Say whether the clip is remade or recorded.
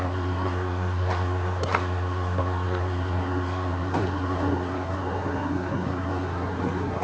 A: remade